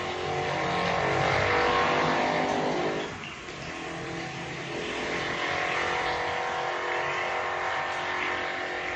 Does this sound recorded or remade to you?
recorded